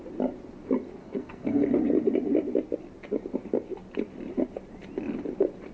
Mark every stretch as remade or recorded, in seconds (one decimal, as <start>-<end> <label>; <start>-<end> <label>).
0.0-1.0 recorded; 1.0-1.8 remade; 1.8-5.7 recorded